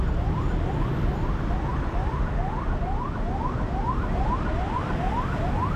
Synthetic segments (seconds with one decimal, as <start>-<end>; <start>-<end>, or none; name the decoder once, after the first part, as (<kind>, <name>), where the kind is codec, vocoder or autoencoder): none